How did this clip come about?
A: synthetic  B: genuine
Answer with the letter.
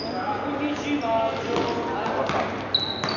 B